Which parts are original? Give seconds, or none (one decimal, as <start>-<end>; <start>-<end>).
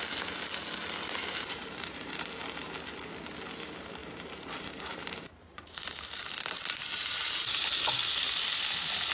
0.0-1.2; 2.3-4.0; 6.4-7.1; 7.7-9.1